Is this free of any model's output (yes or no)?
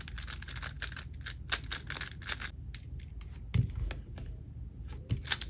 yes